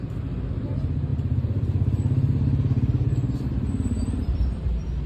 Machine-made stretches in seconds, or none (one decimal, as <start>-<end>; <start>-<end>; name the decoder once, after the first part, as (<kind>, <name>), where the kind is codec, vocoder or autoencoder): none

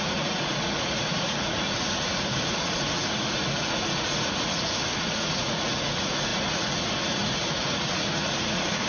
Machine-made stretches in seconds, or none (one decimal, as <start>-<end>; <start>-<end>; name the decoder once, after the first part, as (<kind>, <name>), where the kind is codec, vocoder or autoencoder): 0.0-8.9 (vocoder, Vocos)

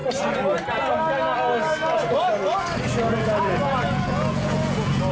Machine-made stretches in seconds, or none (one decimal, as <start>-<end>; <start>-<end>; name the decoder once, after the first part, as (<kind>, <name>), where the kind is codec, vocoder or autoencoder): 3.1-5.1 (vocoder, Vocos)

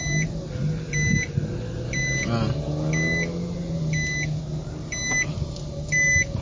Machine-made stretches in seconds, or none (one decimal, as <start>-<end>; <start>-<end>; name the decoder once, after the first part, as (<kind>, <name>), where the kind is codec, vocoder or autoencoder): none

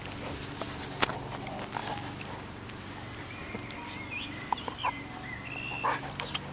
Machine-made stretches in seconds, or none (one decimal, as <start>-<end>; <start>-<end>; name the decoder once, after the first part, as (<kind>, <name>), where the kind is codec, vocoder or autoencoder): 1.8-5.7 (vocoder, BigVGAN v2)

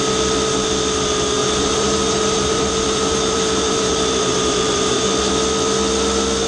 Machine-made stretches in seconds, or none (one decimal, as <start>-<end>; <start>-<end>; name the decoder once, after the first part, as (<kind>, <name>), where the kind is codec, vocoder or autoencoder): 1.4-5.3 (vocoder, BigVGAN v2)

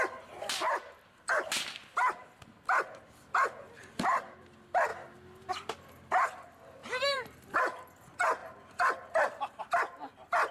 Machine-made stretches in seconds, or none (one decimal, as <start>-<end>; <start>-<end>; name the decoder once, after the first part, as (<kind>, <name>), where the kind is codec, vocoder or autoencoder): 6.8-7.6 (vocoder, BigVGAN v2); 8.4-9.6

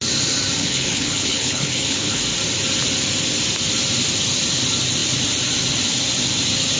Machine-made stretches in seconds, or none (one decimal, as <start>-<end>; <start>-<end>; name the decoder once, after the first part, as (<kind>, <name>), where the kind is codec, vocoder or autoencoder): 0.6-2.2 (codec, HILCodec)